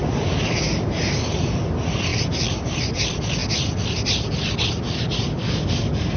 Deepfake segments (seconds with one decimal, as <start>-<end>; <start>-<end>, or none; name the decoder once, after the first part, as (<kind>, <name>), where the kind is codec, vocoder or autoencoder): 5.4-6.2 (codec, DAC)

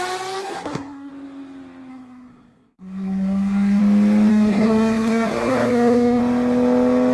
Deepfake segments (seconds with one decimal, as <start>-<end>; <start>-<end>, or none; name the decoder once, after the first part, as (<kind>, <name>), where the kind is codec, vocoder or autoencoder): 0.4-1.1 (codec, SNAC); 1.9-3.8; 4.3-6.2

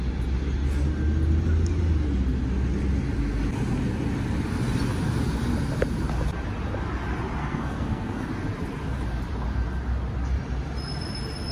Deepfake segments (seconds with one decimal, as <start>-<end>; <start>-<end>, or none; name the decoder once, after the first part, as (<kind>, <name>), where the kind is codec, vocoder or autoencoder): 7.4-8.3 (codec, SNAC)

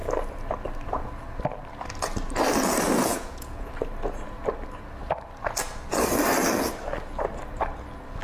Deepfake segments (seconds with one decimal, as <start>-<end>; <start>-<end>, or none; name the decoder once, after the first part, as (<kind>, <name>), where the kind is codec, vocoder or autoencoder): 3.1-3.7 (vocoder, Vocos)

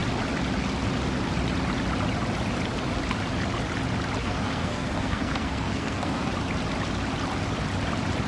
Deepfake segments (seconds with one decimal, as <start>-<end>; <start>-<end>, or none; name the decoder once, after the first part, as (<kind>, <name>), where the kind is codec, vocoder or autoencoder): 4.2-6.3 (codec, SNAC)

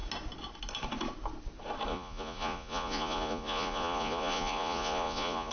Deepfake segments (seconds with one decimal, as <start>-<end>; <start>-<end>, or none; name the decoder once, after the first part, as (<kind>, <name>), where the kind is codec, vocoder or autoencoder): 1.9-5.5 (vocoder, Vocos)

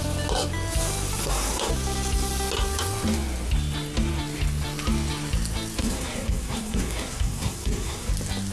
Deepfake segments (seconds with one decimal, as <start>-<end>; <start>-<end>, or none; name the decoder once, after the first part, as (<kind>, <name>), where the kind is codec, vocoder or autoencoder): 1.2-1.7 (codec, SNAC); 5.8-8.1

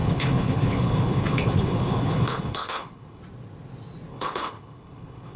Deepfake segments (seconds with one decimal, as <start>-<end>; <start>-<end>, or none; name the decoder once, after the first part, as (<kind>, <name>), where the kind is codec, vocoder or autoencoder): 0.0-3.2 (codec, HILCodec); 4.1-5.4